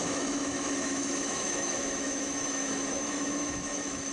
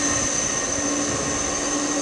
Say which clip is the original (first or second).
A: second